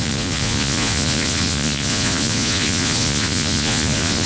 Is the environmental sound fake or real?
fake